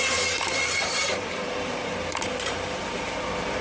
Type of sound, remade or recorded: remade